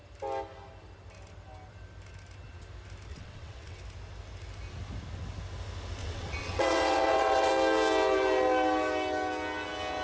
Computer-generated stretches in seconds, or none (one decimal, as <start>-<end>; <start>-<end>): 3.1-3.8; 6.0-7.5